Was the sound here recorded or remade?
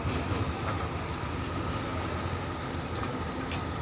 recorded